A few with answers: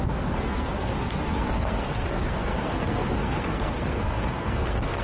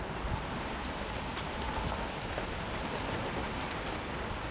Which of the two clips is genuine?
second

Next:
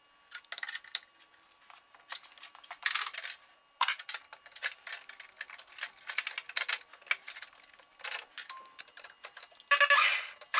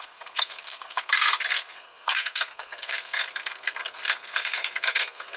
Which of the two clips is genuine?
first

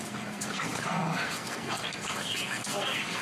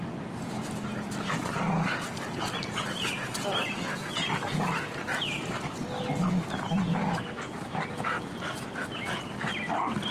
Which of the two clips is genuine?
second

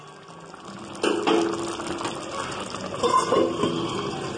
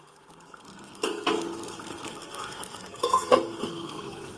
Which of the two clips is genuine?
first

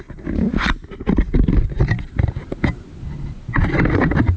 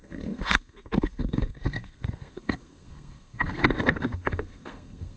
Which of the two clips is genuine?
first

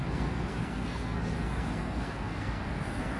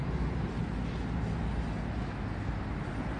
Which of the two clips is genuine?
second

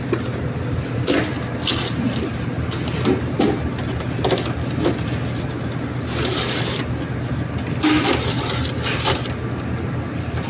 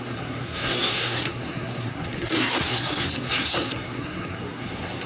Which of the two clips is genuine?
first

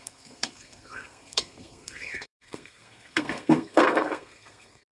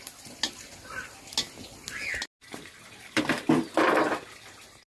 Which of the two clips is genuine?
second